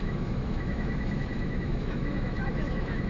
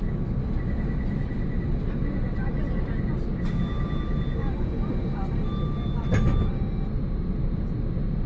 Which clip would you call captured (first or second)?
second